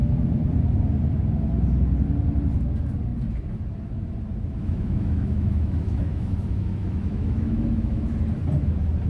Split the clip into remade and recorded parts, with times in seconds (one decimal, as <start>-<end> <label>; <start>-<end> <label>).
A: 0.0-4.6 recorded; 4.6-8.1 remade; 8.1-9.1 recorded